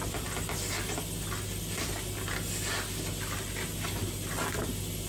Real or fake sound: real